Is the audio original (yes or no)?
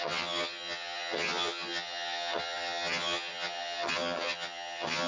no